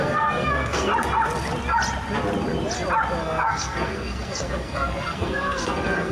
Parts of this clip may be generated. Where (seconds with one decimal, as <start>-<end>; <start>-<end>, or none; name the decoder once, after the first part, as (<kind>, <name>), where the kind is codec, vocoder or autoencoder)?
0.0-0.9 (codec, SNAC); 3.2-6.1